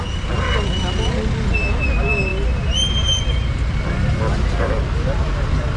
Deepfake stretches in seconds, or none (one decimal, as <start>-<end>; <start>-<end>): none